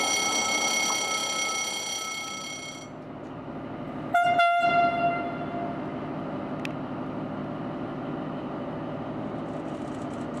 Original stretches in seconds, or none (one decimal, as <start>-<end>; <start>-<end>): 0.0-10.4